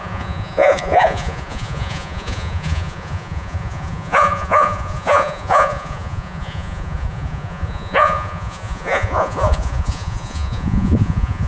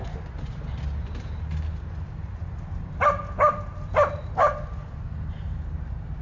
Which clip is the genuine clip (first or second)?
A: second